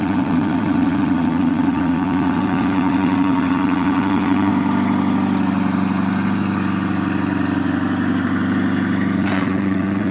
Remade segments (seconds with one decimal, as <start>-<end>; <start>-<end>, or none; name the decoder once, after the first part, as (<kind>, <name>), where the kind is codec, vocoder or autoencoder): 0.0-4.5 (vocoder, WaveNeXt); 9.2-10.1